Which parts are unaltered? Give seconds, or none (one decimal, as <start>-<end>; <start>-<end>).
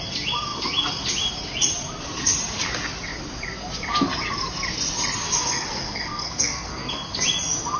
0.0-5.2; 6.9-7.8